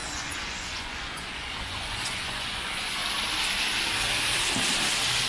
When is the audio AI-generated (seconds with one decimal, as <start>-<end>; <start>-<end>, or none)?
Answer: 0.0-3.0